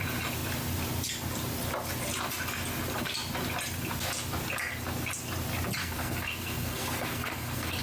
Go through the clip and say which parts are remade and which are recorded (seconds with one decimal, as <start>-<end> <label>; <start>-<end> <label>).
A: 0.0-5.8 recorded; 5.8-7.8 remade